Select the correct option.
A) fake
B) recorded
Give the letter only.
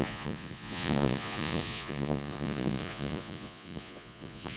A